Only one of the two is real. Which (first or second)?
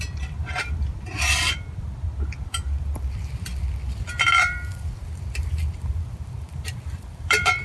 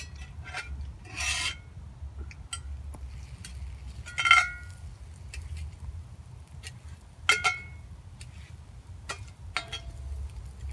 second